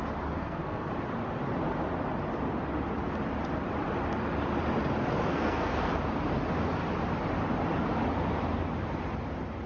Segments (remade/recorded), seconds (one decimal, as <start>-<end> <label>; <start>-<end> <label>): 0.0-0.4 recorded; 0.4-0.9 remade; 0.9-5.3 recorded; 5.3-5.8 remade; 5.8-9.7 recorded